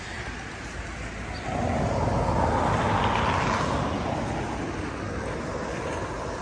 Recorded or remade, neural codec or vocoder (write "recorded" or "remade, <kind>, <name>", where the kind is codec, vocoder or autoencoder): recorded